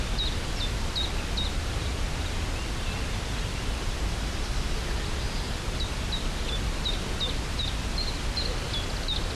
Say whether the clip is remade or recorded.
recorded